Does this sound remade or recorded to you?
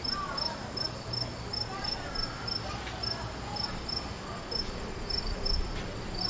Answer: recorded